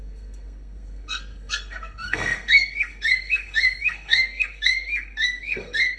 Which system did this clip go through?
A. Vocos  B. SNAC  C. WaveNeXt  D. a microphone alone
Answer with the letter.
B